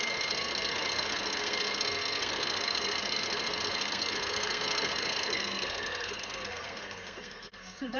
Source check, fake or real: fake